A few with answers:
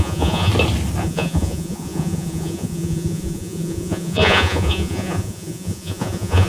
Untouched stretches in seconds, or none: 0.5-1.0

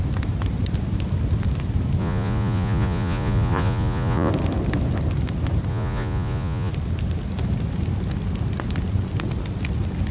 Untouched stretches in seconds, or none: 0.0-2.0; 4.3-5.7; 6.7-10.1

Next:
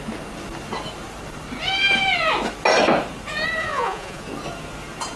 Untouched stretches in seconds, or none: 0.0-3.6; 4.2-5.2